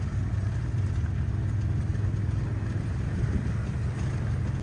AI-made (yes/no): no